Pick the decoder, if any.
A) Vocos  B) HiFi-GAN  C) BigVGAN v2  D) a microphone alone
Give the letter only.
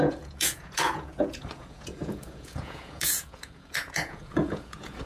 A